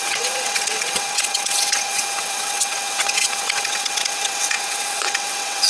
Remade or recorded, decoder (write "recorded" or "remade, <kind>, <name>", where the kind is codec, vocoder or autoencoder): remade, vocoder, WaveNeXt